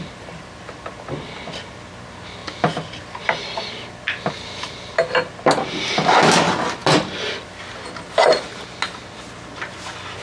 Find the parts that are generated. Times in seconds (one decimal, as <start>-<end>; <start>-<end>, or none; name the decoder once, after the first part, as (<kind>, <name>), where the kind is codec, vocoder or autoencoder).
none